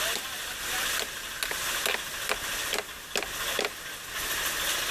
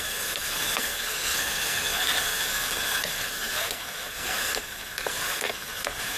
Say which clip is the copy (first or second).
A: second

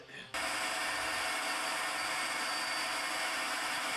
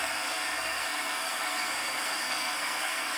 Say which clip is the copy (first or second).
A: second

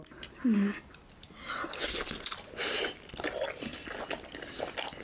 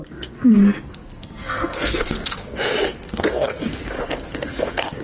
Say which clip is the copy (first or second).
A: second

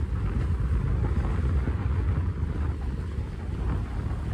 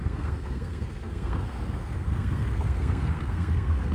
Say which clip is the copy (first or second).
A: second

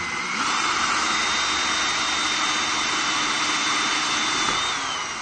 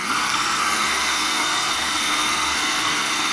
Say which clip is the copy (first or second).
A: second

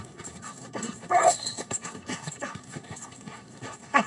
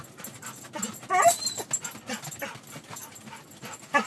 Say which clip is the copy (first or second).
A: first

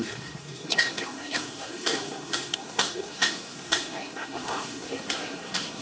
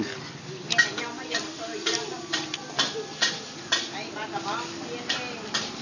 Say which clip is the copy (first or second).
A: first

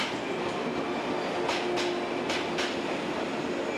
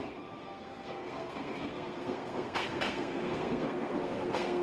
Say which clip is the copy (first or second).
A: second